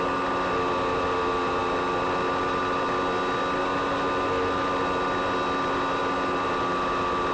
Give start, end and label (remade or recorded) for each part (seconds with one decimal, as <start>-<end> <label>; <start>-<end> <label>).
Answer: 0.0-7.3 recorded